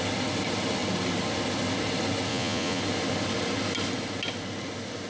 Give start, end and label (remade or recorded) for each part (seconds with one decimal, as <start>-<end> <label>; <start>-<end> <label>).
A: 0.0-2.3 recorded; 2.3-2.8 remade; 2.8-5.1 recorded